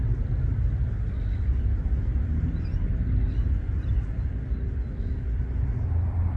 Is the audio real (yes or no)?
yes